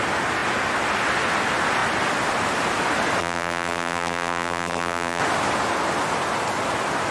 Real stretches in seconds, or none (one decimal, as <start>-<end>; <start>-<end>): 0.0-3.2; 5.2-7.1